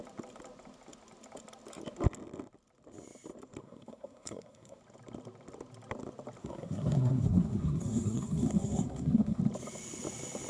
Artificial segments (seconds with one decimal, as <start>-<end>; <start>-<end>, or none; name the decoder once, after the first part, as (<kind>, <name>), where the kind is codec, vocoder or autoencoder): 3.6-4.8 (codec, SNAC); 6.4-9.4

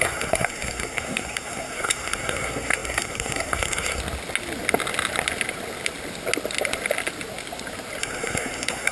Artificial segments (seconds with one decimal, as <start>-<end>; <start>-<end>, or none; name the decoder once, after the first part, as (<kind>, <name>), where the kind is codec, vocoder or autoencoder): 0.0-4.0 (codec, SNAC); 8.0-8.9

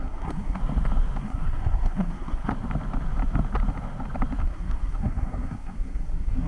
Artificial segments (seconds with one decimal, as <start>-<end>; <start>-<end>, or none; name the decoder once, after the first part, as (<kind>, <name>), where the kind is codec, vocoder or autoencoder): 0.0-0.6 (codec, SNAC); 1.2-2.5; 4.4-6.5

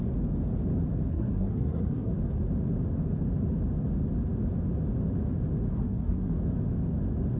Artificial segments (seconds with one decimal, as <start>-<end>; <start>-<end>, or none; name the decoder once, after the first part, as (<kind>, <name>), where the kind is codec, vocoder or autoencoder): 1.1-2.1 (codec, SNAC); 5.7-6.3

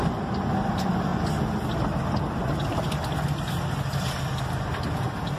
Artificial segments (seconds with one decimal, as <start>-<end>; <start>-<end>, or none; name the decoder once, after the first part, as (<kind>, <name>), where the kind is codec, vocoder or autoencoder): none

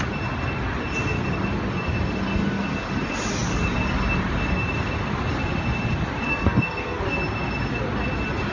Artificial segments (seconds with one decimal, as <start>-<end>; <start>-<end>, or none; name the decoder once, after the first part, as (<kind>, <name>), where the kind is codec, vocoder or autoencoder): 6.3-7.0 (codec, SNAC)

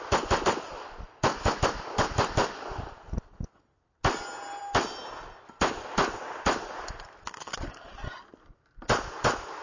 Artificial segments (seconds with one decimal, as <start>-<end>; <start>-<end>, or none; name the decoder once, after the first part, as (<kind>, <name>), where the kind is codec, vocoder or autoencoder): none

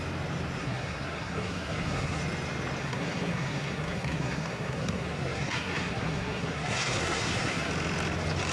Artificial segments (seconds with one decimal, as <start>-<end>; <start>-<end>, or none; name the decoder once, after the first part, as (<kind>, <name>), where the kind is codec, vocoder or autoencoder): 0.6-2.2 (codec, SNAC); 2.8-7.7